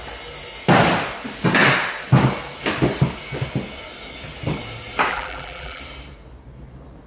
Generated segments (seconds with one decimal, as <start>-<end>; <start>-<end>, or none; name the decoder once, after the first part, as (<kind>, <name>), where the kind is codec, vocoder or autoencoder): 5.1-5.8 (vocoder, BigVGAN v2)